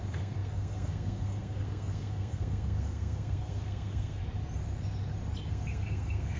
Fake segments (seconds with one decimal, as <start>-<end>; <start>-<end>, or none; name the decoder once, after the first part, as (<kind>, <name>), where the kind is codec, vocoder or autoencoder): 0.0-4.2 (codec, SNAC); 5.5-6.4